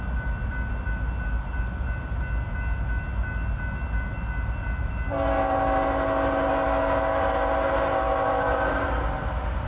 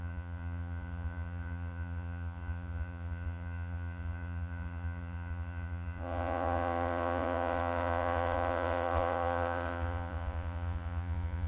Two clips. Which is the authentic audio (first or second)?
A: first